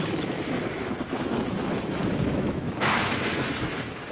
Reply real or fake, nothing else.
fake